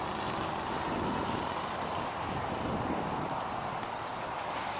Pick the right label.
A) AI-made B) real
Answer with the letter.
B